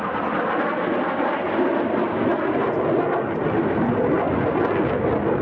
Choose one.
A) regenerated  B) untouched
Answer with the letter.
B